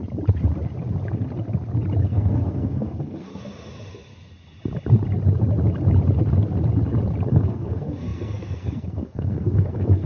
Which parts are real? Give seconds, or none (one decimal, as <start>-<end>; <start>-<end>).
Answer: 0.0-2.0; 3.3-7.3